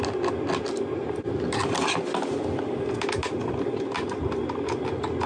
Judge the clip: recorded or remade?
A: recorded